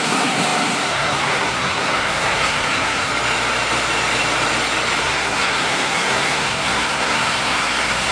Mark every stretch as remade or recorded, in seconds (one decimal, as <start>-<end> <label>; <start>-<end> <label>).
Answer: 0.0-3.1 remade; 3.1-5.0 recorded; 5.0-8.1 remade